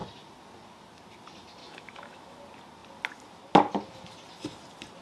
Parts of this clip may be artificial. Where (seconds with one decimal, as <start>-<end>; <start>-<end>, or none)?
1.6-2.4